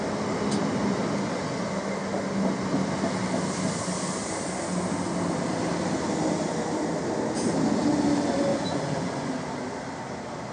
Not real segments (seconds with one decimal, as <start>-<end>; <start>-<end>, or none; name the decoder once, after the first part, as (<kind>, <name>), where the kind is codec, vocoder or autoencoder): 8.5-9.3 (vocoder, Vocos)

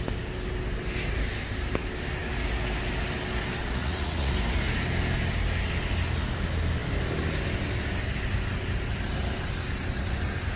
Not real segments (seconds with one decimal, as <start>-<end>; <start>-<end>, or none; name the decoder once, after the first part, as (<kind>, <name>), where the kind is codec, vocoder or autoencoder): 3.6-4.3 (vocoder, Vocos)

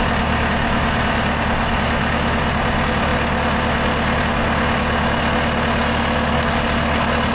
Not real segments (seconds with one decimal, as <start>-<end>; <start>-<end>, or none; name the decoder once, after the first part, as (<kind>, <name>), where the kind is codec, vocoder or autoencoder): none

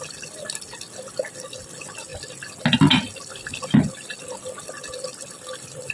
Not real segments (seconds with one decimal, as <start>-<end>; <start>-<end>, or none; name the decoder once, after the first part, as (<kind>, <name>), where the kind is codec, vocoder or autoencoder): none

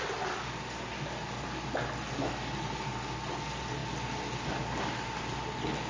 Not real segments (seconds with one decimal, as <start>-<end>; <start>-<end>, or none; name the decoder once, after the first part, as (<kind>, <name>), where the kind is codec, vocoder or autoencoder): none

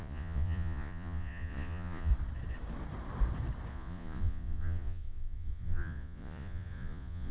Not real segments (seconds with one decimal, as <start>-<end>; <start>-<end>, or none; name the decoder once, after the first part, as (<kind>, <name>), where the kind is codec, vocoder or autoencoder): 0.0-2.1 (vocoder, Vocos); 3.7-7.3

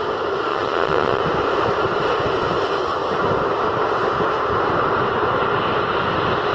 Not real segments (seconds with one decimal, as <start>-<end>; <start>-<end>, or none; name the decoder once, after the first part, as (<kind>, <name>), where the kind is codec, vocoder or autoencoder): 0.5-1.2 (vocoder, Vocos)